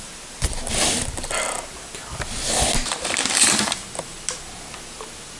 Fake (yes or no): no